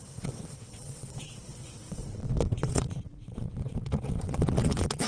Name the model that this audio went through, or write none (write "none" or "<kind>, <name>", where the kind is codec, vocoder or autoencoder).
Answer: vocoder, WaveNeXt